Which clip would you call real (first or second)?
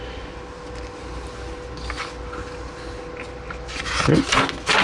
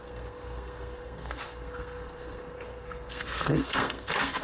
first